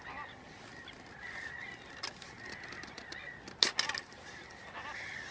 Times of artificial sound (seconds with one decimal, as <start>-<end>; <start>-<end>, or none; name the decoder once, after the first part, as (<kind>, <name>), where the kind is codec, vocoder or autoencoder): none